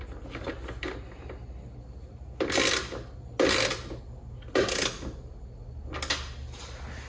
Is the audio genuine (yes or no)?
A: yes